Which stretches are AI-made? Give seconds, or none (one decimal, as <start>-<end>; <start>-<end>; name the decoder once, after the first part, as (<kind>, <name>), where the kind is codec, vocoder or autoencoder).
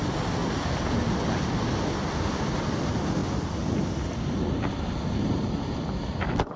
none